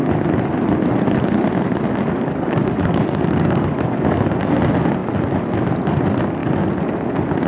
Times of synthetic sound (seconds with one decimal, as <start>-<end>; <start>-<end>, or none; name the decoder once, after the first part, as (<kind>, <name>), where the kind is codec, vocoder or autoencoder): 2.2-4.3 (codec, DAC)